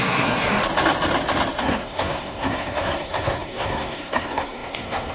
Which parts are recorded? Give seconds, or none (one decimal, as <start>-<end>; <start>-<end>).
0.5-1.6